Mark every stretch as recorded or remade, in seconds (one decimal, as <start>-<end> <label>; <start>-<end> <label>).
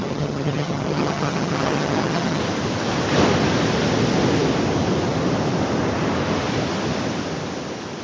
0.0-2.4 remade; 2.4-8.0 recorded